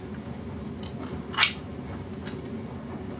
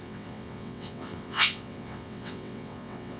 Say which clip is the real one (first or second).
first